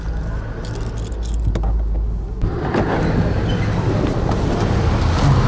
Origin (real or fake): real